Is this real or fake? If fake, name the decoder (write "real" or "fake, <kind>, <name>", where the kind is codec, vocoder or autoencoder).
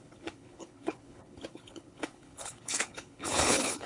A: fake, codec, HILCodec